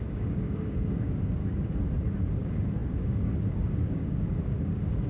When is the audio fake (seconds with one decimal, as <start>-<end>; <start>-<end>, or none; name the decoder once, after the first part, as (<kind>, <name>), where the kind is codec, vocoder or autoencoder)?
0.0-1.4 (codec, DAC); 2.2-5.1